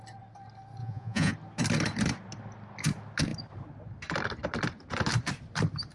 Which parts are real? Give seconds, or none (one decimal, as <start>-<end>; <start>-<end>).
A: 0.0-0.8; 1.3-5.9